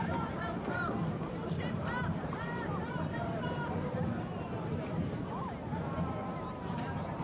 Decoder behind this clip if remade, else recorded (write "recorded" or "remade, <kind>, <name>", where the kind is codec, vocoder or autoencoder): remade, vocoder, BigVGAN v2